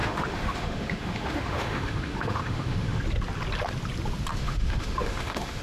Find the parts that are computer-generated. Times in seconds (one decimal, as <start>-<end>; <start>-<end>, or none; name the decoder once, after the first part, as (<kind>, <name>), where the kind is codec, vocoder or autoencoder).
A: 0.0-3.0 (autoencoder, DAC-VAE); 4.3-5.6